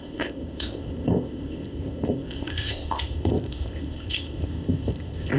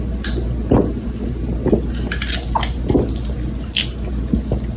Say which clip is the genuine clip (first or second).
second